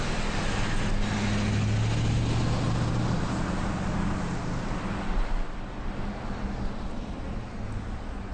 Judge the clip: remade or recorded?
recorded